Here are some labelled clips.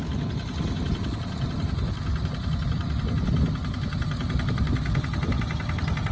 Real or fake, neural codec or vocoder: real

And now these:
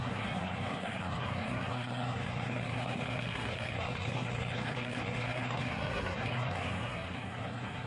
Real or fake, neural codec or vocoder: fake, codec, SNAC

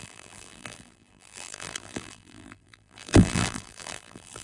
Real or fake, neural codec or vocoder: fake, vocoder, BigVGAN v2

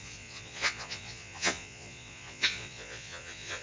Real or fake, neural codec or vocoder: fake, vocoder, Vocos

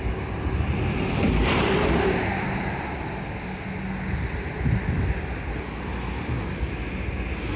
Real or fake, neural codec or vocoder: real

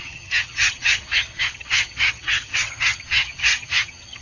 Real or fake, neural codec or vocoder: fake, vocoder, HiFi-GAN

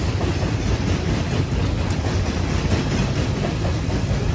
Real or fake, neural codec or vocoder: fake, vocoder, BigVGAN v2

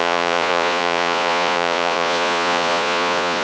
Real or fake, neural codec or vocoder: fake, vocoder, Vocos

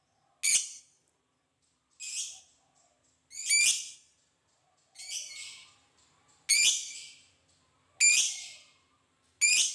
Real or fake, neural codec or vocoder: real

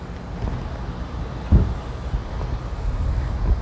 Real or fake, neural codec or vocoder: real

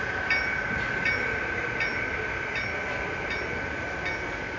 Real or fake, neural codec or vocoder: real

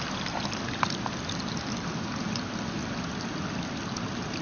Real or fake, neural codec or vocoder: real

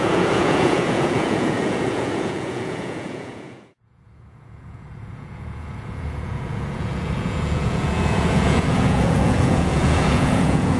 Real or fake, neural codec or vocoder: fake, vocoder, Vocos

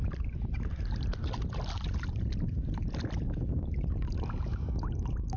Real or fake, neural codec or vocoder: real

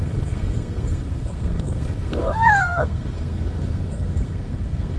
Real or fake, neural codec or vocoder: fake, codec, SNAC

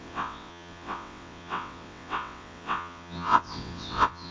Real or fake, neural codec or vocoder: fake, vocoder, WaveNeXt